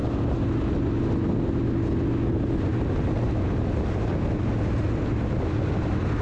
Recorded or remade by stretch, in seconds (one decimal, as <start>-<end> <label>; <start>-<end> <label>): 0.0-6.2 recorded